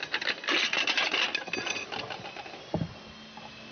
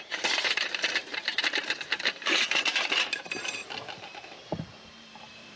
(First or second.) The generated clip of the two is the second